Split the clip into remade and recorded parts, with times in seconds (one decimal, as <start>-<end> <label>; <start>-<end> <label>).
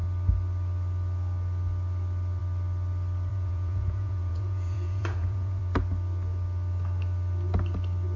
0.0-3.3 recorded; 3.3-5.6 remade; 5.6-8.2 recorded